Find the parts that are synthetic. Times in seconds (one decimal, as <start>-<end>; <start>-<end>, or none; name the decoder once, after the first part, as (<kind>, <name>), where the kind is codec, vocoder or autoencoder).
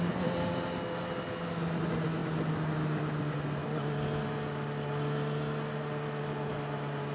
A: none